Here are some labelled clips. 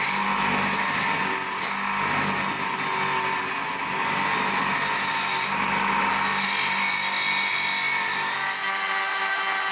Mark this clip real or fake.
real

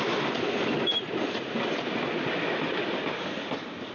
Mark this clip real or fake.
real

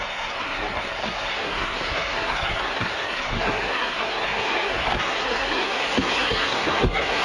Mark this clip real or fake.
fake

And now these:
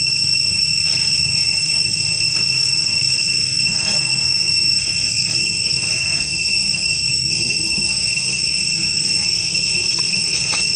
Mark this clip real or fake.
fake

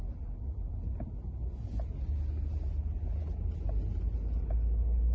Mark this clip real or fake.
real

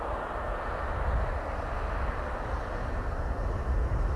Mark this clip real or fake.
real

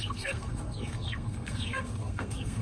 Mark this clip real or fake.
fake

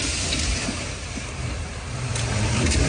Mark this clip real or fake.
real